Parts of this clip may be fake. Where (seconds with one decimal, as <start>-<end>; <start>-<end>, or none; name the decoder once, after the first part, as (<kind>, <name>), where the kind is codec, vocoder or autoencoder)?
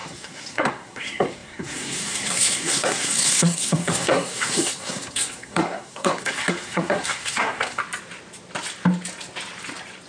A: 0.0-7.8 (codec, SNAC)